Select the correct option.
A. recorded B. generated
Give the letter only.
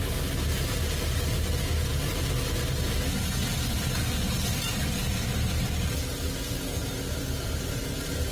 A